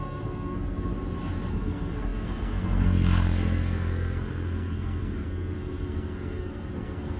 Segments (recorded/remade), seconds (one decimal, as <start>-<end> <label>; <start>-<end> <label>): 0.0-0.9 remade; 0.9-1.5 recorded; 1.5-7.2 remade